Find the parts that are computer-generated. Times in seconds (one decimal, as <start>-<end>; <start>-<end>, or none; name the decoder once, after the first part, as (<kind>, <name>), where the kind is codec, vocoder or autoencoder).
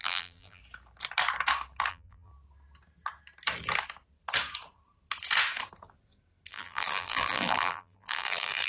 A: 0.0-0.6 (vocoder, BigVGAN v2); 1.9-2.3; 6.5-8.7